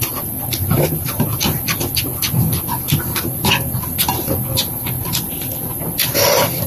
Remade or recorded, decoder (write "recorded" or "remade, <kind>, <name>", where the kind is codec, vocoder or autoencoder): recorded